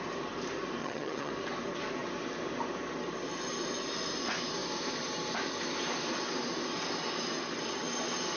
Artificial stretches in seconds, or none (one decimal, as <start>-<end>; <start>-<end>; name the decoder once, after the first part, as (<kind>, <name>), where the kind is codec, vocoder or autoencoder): 0.8-1.3 (vocoder, HiFi-GAN)